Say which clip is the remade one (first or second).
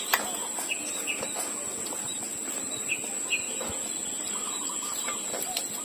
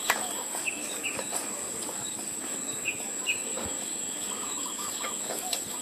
second